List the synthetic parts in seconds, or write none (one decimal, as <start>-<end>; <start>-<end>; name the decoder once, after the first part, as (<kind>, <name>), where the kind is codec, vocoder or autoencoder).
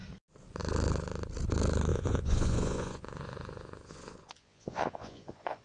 1.9-5.6 (vocoder, Vocos)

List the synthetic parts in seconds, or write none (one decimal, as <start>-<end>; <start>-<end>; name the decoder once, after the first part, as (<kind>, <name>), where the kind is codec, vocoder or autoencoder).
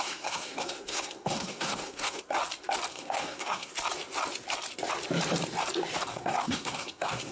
0.0-2.2 (codec, SNAC); 2.9-3.7; 6.1-7.3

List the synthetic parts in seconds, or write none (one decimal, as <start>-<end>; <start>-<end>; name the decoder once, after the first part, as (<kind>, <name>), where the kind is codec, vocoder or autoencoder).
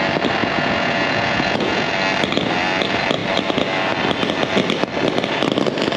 0.4-1.9 (vocoder, Vocos)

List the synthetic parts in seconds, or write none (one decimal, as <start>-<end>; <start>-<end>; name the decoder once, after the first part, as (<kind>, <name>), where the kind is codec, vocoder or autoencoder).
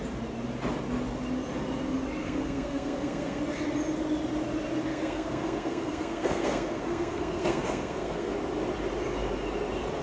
2.2-3.4 (codec, SNAC); 4.9-8.3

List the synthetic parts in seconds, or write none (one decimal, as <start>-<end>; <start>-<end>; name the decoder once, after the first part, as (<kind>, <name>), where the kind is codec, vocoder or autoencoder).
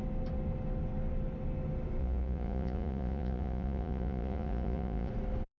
2.0-5.1 (vocoder, Vocos)